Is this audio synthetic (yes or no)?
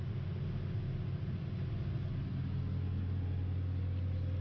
no